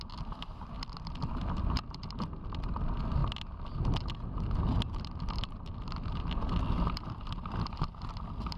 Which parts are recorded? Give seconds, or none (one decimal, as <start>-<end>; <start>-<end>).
0.0-8.6